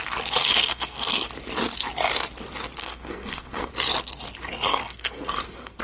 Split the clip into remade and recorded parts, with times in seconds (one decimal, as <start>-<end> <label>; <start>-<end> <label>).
0.0-0.4 recorded; 0.4-1.3 remade; 1.3-2.8 recorded; 2.8-3.7 remade; 3.7-4.7 recorded; 4.7-5.8 remade